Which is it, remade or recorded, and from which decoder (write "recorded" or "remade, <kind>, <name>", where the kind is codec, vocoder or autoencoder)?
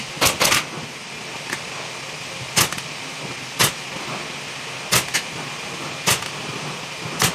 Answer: recorded